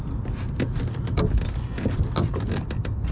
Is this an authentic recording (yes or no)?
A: yes